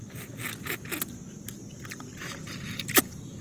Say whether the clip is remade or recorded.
recorded